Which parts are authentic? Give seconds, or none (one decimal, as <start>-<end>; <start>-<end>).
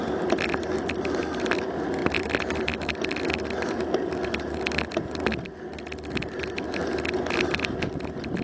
0.0-8.4